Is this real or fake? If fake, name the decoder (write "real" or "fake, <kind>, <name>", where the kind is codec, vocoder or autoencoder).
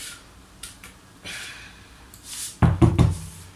fake, vocoder, BigVGAN v2